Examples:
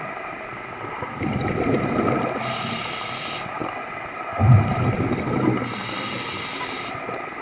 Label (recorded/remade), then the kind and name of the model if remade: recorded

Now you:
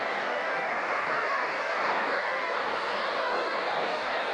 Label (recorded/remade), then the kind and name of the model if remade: remade, codec, DAC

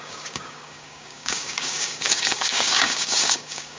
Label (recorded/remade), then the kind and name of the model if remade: remade, codec, DAC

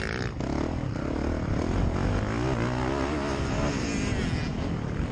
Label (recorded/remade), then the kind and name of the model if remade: recorded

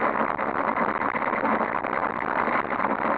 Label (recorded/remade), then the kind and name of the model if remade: recorded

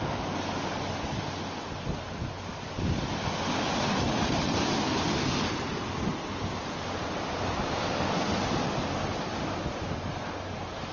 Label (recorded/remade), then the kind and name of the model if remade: recorded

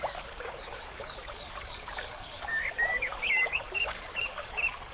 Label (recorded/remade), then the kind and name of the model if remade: remade, codec, DAC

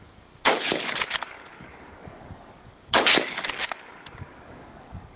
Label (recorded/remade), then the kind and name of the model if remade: remade, codec, DAC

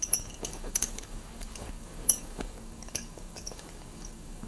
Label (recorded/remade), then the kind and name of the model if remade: remade, codec, DAC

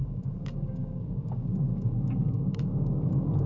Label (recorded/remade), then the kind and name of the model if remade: remade, codec, DAC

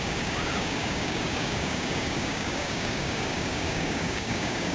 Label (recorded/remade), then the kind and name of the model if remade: remade, codec, DAC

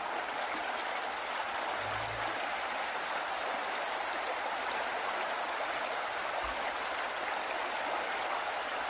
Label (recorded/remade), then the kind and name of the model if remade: recorded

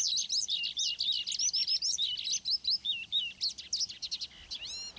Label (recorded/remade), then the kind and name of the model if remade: recorded